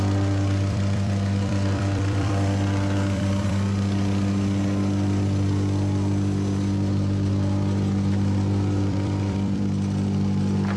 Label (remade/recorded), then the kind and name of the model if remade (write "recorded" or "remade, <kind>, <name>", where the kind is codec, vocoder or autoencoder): remade, vocoder, BigVGAN v2